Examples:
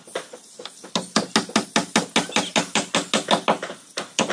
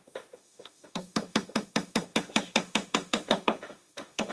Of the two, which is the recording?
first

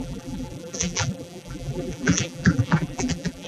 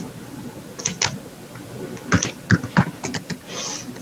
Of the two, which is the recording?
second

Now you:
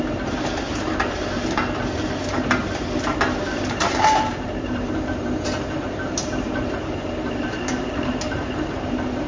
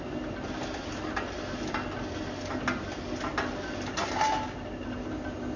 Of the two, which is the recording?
second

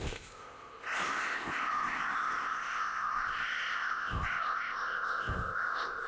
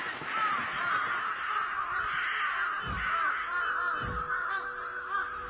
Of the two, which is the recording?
second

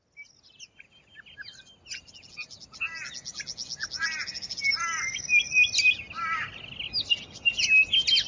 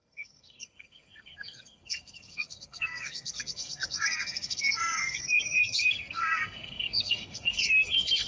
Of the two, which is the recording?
first